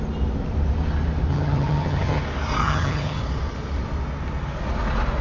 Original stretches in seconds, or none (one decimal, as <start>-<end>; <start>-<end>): 0.0-1.3; 2.2-2.6; 3.2-5.2